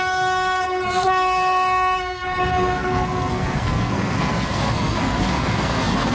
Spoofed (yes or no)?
yes